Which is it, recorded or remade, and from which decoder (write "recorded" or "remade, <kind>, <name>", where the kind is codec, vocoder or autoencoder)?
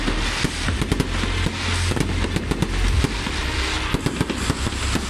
recorded